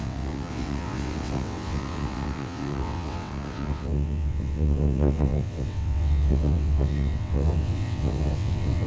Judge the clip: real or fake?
fake